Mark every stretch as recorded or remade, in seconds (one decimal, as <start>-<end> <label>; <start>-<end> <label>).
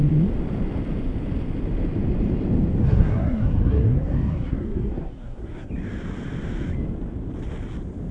0.0-2.8 recorded; 2.8-5.7 remade; 5.7-8.1 recorded